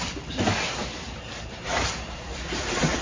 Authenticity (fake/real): real